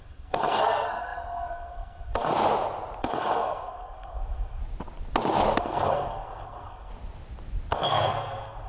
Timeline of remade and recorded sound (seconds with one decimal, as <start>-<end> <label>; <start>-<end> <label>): 0.0-2.3 remade; 2.3-3.0 recorded; 3.0-4.6 remade; 4.6-5.6 recorded; 5.6-6.9 remade; 6.9-7.7 recorded; 7.7-8.7 remade

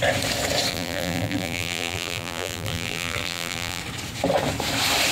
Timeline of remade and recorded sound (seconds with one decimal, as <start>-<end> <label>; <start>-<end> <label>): 0.0-0.7 recorded; 0.7-3.8 remade; 3.8-5.1 recorded

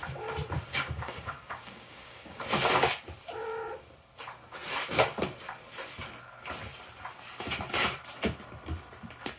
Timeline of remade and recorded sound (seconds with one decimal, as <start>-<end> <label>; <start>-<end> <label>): 0.0-0.7 recorded; 0.7-2.4 remade; 2.4-9.4 recorded

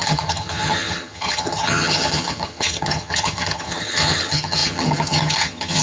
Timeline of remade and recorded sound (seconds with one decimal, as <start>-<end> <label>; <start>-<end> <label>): 0.0-5.8 remade